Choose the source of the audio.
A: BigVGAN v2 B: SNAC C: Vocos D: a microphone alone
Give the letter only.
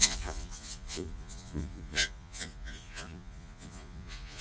C